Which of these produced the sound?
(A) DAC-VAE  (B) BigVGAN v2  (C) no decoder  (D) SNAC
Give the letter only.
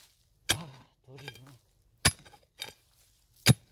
C